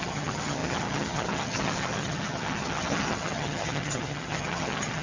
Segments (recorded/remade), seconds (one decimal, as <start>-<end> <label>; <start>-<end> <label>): 0.0-5.0 remade